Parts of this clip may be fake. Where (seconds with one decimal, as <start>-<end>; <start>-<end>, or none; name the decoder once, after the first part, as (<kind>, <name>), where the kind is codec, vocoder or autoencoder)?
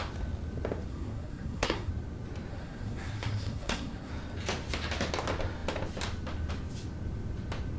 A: 0.9-1.9 (codec, SNAC); 2.5-4.1